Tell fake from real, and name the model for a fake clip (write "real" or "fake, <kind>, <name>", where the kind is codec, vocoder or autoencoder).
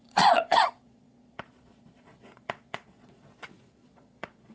fake, vocoder, Vocos